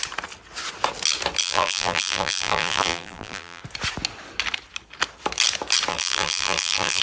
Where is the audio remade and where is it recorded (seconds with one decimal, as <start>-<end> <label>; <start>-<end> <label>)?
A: 0.0-1.4 recorded; 1.4-3.6 remade; 3.6-5.9 recorded; 5.9-7.0 remade